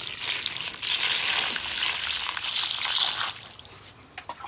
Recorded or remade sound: recorded